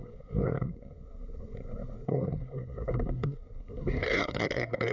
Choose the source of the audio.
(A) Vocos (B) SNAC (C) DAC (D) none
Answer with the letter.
B